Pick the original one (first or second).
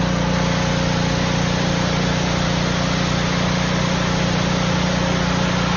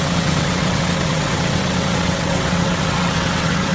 first